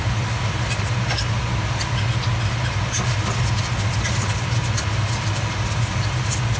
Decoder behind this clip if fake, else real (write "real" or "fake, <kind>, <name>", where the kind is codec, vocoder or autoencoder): real